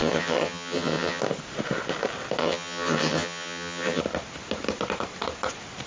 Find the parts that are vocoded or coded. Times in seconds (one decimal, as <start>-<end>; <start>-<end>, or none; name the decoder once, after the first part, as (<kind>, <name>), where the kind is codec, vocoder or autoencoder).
0.0-1.2 (vocoder, HiFi-GAN); 2.4-4.0